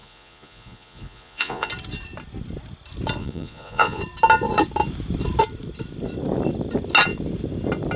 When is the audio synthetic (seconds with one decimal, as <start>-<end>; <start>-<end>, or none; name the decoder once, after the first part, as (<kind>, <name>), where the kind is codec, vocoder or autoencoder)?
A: 0.0-1.7 (vocoder, Vocos); 3.2-4.0